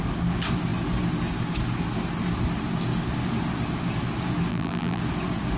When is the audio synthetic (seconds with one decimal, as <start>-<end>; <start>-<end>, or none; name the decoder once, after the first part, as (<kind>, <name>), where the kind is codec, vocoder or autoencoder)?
4.5-5.0 (vocoder, BigVGAN v2)